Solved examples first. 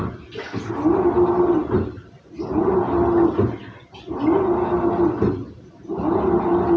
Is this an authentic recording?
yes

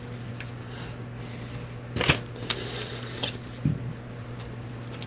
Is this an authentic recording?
yes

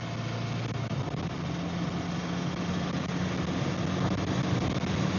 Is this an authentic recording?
yes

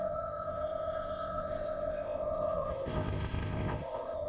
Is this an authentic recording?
no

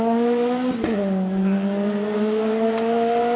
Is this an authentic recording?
yes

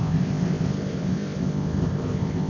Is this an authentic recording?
no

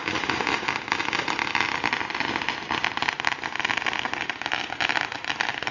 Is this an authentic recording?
yes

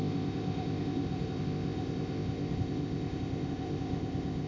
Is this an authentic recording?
no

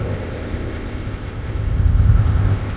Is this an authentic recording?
no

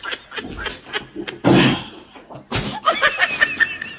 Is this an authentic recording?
yes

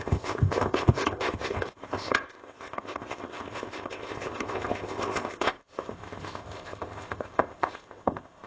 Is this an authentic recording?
no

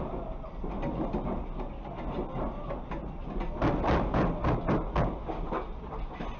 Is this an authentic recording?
yes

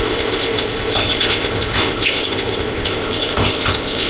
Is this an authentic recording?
no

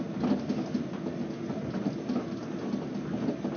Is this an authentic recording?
yes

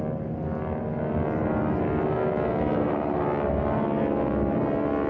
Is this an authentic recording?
yes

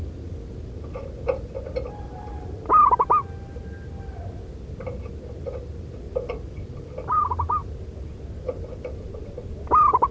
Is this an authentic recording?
yes